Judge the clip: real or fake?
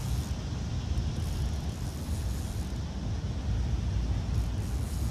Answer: real